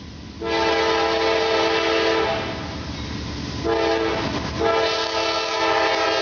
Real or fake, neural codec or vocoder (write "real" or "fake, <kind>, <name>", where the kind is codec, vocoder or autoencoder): real